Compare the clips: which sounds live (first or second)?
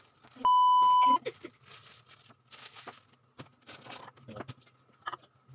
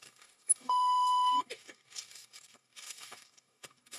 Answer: first